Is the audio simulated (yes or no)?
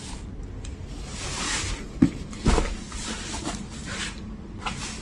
no